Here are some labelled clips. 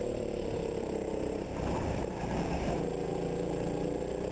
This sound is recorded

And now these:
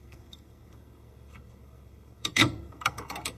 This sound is remade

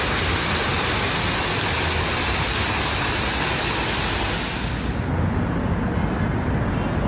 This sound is recorded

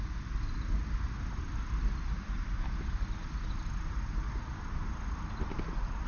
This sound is recorded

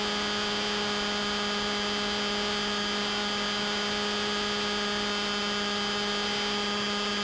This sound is recorded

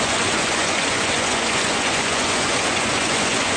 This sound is remade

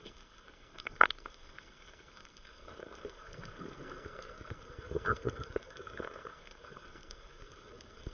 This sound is remade